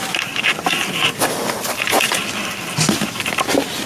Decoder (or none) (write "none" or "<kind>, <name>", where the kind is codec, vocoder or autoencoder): none